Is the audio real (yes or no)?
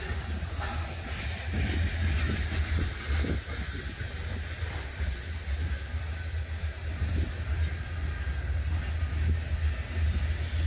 yes